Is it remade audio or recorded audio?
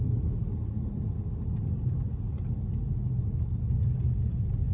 recorded